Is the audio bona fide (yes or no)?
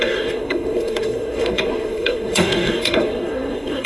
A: no